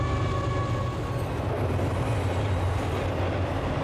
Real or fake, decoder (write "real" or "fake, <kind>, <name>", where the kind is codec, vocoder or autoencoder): real